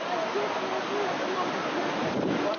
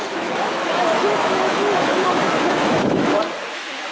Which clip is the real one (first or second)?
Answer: first